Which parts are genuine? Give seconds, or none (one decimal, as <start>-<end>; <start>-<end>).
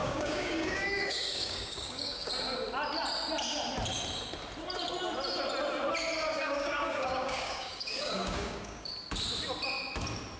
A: 2.3-6.3; 8.9-10.4